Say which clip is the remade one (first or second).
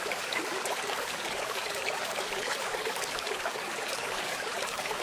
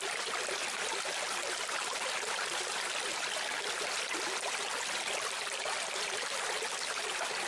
first